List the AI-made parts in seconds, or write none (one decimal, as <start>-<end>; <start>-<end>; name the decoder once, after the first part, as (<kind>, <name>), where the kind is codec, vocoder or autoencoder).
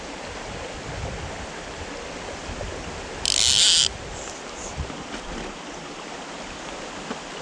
none